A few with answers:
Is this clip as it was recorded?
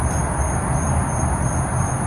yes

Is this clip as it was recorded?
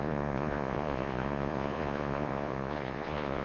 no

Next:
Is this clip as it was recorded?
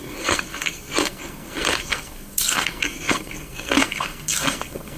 no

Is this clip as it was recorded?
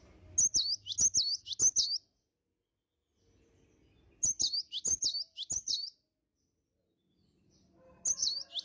yes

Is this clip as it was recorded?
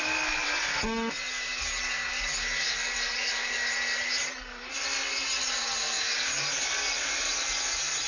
yes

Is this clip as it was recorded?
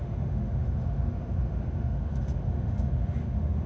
no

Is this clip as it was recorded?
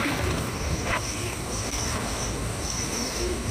no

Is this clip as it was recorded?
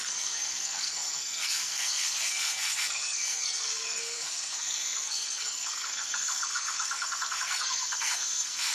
no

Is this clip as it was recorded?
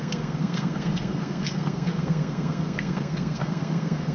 no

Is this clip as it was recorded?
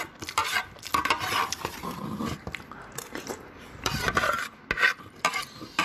yes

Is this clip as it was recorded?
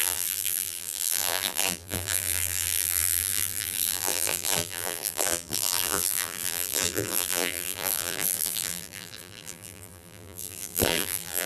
no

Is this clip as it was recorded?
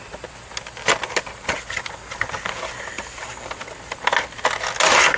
yes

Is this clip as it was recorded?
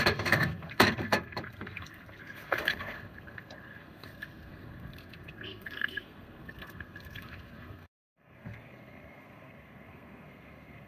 no